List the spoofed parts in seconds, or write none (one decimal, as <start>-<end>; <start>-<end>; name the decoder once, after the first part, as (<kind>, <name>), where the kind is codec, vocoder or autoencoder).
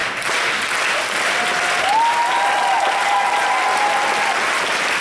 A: none